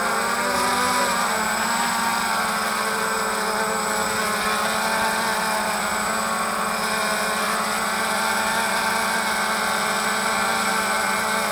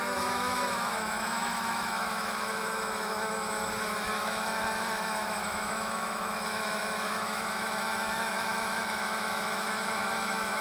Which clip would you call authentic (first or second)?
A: first